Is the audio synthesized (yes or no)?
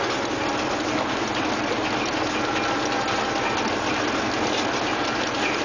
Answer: no